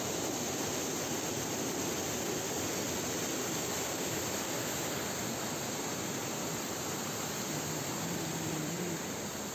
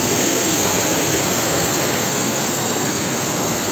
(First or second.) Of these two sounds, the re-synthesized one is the second